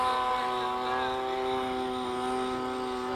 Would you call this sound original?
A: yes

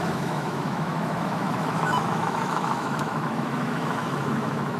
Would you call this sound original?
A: no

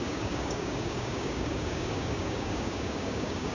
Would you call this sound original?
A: no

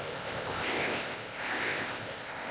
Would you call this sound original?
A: no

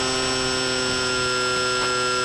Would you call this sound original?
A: yes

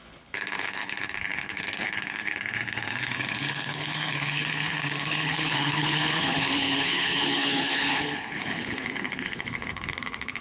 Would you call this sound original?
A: no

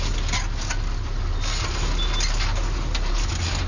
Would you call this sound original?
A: yes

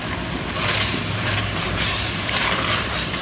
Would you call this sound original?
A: no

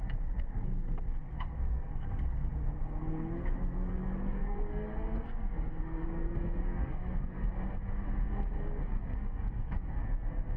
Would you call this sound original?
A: no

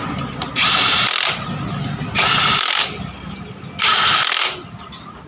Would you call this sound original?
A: yes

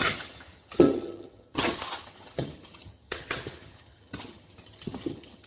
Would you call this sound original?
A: no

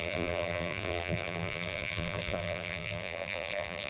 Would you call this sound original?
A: no